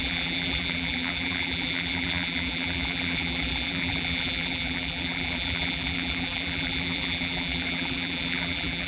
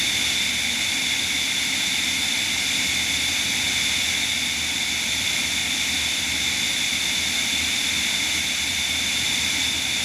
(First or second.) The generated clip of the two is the first